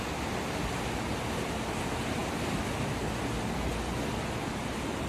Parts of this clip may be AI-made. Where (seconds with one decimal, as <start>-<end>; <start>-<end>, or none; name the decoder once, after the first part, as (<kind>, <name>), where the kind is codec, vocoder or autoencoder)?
none